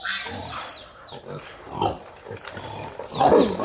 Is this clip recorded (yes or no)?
yes